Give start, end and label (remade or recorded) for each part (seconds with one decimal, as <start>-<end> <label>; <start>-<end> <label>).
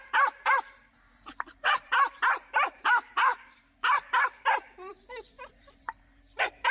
0.0-6.7 remade